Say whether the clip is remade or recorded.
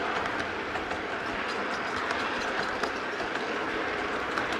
recorded